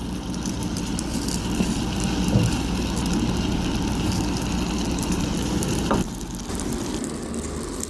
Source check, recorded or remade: recorded